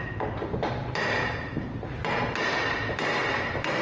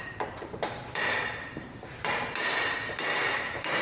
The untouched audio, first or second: first